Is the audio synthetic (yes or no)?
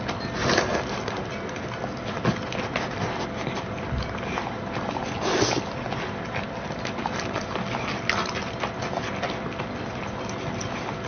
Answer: no